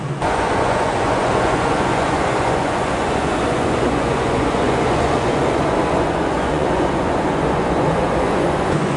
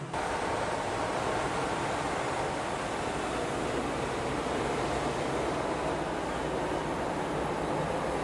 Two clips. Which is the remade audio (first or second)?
first